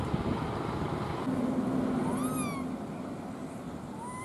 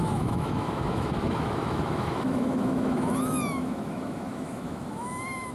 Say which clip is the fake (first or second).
second